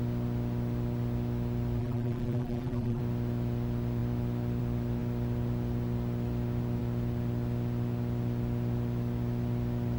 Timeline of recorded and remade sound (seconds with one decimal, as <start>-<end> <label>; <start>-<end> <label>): 0.0-1.8 recorded; 1.8-3.0 remade; 3.0-10.0 recorded